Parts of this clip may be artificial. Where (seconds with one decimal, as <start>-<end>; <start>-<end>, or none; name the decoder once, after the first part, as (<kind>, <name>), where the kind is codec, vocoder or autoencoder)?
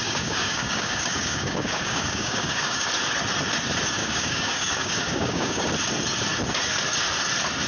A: 0.0-2.9 (codec, DAC); 4.0-5.7